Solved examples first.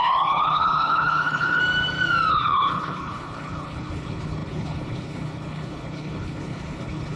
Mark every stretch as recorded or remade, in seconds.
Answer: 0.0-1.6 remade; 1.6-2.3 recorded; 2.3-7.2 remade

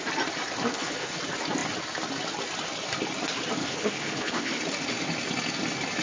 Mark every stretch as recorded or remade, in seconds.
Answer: 0.0-0.7 recorded; 0.7-1.2 remade; 1.2-3.6 recorded; 3.6-4.6 remade; 4.6-6.0 recorded

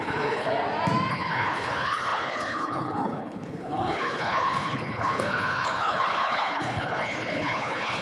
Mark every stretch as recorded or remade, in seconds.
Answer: 0.0-0.5 remade; 0.5-1.1 recorded; 1.1-8.0 remade

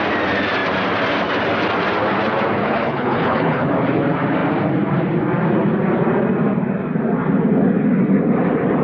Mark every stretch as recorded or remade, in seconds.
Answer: 0.0-2.6 recorded; 2.6-3.7 remade; 3.7-8.8 recorded

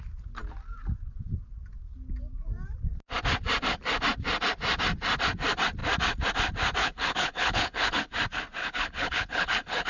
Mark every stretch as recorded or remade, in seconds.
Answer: 0.0-6.8 recorded; 6.8-8.0 remade; 8.0-8.6 recorded; 8.6-9.9 remade

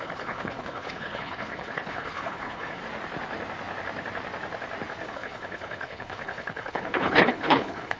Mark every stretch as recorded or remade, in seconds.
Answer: 0.0-2.8 remade; 2.8-5.1 recorded; 5.1-8.0 remade

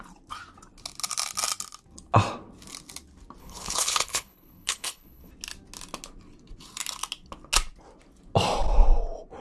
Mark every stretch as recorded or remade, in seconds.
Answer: 0.0-3.4 recorded; 3.4-5.3 remade; 5.3-9.4 recorded